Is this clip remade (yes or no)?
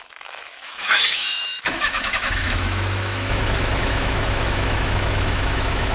yes